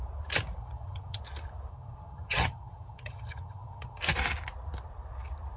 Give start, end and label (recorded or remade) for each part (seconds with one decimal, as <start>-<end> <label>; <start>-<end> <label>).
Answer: 0.0-0.6 recorded; 0.6-1.2 remade; 1.2-1.7 recorded; 1.7-4.0 remade; 4.0-5.6 recorded